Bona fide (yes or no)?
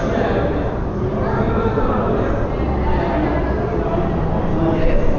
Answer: yes